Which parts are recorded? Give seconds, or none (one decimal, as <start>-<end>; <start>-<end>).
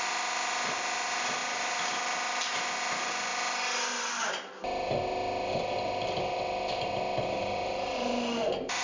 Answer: 3.3-7.4